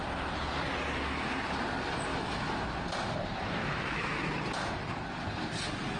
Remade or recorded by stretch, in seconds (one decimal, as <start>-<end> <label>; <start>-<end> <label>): 0.0-2.1 recorded; 2.1-2.6 remade; 2.6-3.6 recorded; 3.6-4.3 remade; 4.3-6.0 recorded